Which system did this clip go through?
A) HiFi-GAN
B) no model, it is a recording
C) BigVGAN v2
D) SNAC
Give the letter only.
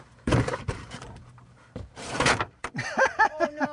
C